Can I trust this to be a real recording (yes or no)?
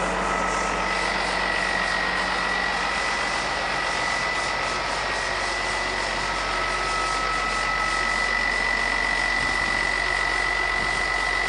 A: yes